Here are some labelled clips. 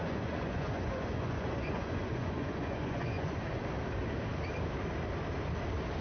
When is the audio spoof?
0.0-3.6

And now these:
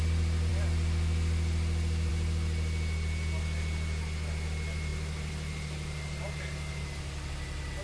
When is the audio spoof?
none

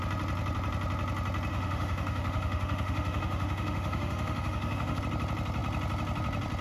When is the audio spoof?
1.5-5.0

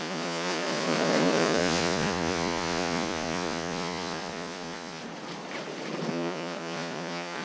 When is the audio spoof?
0.0-5.0; 6.1-7.4